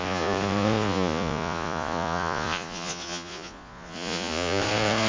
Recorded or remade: remade